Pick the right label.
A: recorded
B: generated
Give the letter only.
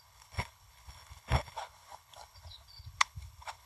B